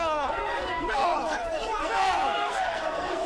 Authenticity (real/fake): fake